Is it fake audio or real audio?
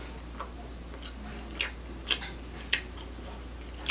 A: real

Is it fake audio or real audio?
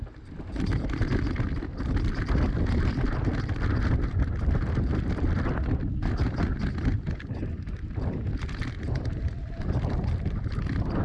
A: real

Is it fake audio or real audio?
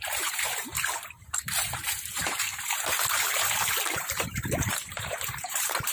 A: fake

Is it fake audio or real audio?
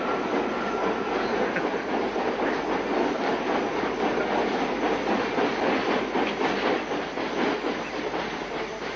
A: real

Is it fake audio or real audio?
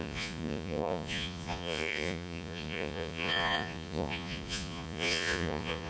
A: fake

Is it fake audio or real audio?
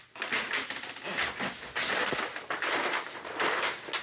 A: real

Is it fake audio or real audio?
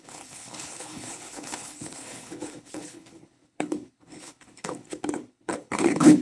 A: fake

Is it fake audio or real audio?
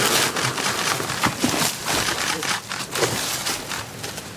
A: fake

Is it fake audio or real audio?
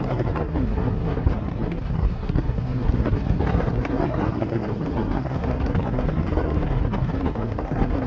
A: fake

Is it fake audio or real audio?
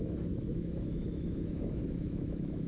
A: fake